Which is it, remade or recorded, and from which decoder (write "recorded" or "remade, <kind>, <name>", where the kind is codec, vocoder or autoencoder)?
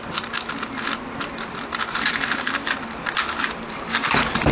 recorded